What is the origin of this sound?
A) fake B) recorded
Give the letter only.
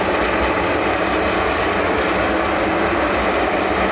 B